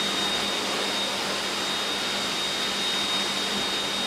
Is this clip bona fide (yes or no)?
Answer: yes